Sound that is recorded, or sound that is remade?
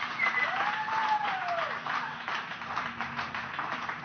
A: remade